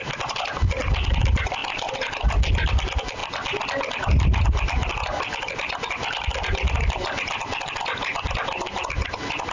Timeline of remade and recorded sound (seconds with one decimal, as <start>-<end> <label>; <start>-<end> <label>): 0.0-1.6 recorded; 1.6-2.3 remade; 2.3-9.5 recorded